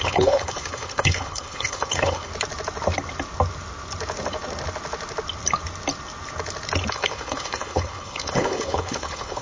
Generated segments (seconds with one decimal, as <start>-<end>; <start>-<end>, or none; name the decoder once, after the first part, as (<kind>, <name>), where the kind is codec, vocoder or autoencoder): 0.0-2.3 (codec, HILCodec); 6.9-9.4